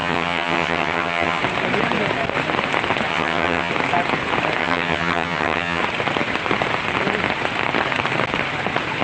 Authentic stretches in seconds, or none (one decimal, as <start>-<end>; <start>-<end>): 1.4-3.1; 3.7-4.6; 5.8-9.0